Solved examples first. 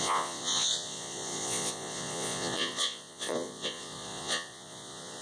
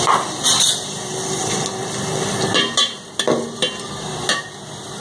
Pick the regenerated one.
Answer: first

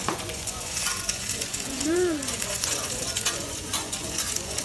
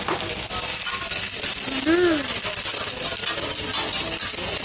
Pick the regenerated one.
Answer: first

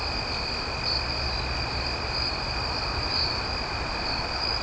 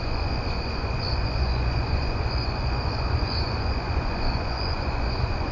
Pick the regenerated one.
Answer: second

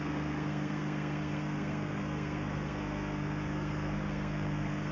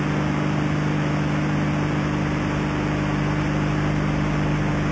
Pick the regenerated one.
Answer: first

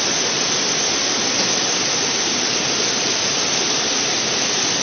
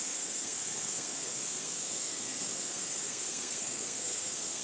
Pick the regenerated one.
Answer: second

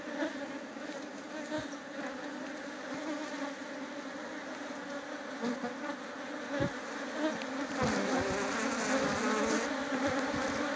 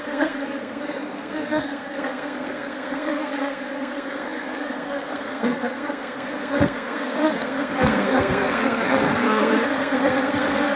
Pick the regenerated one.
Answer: second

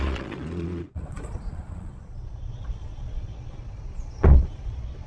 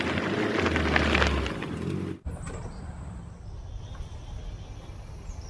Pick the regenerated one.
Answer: first